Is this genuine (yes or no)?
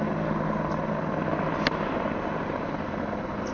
yes